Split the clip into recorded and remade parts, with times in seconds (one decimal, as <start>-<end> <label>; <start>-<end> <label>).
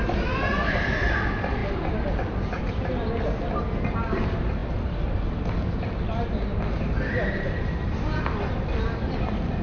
0.0-9.6 recorded